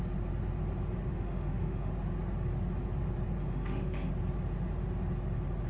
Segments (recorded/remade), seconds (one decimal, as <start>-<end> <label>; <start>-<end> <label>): 0.0-1.1 recorded; 1.1-1.9 remade; 1.9-3.4 recorded; 3.4-4.1 remade; 4.1-5.7 recorded